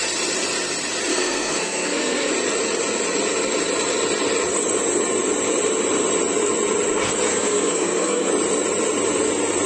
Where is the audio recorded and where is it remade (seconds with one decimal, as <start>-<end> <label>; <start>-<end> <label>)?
0.0-1.1 recorded; 1.1-2.3 remade; 2.3-7.3 recorded; 7.3-8.3 remade; 8.3-9.7 recorded